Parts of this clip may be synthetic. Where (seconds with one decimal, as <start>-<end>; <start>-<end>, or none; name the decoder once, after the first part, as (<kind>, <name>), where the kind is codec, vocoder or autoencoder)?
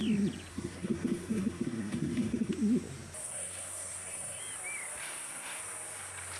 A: 0.5-2.5 (codec, SNAC); 3.2-4.4; 5.0-5.6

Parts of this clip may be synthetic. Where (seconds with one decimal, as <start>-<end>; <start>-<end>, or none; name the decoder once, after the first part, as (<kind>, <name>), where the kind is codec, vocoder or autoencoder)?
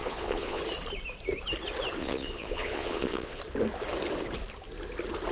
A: 0.0-0.6 (vocoder, Vocos); 2.0-3.4